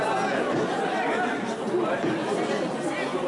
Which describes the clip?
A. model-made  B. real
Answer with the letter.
B